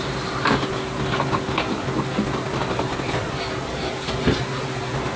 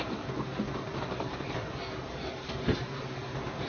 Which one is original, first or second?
first